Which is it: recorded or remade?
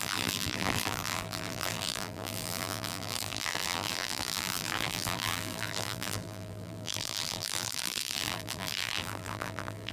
remade